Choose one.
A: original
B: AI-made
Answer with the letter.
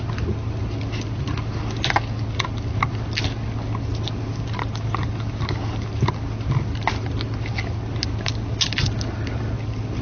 A